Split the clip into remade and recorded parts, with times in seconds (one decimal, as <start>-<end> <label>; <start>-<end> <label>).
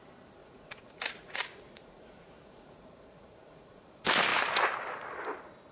0.0-0.4 recorded; 0.4-3.8 remade; 3.8-5.7 recorded